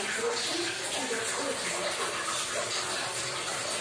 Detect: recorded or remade recorded